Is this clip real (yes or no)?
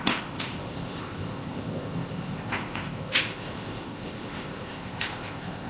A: no